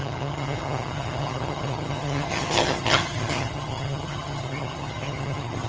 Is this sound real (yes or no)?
no